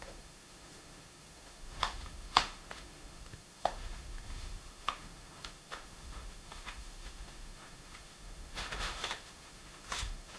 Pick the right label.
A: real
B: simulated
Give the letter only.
B